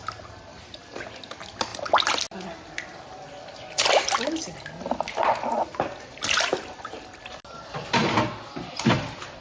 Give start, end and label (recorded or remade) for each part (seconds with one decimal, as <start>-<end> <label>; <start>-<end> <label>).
0.0-9.4 recorded

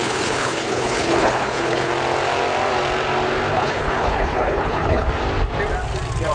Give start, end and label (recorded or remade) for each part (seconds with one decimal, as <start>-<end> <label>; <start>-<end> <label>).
0.0-1.9 remade; 1.9-3.5 recorded; 3.5-5.1 remade; 5.1-6.3 recorded

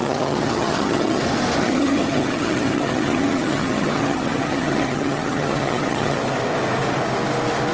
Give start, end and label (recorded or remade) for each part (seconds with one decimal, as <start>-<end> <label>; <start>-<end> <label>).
0.0-1.2 remade; 1.2-1.6 recorded; 1.6-6.2 remade; 6.2-7.7 recorded

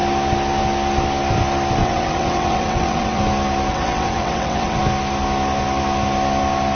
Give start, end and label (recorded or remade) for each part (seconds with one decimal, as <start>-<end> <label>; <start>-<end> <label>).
0.0-1.8 recorded; 1.8-3.2 remade; 3.2-3.7 recorded; 3.7-4.8 remade; 4.8-6.7 recorded

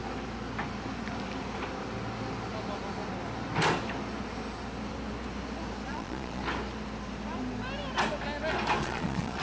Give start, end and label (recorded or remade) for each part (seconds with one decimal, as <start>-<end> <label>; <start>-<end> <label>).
0.0-5.9 recorded; 5.9-6.4 remade; 6.4-8.8 recorded; 8.8-9.4 remade